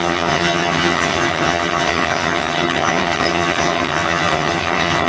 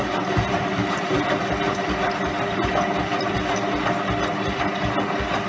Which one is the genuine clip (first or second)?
second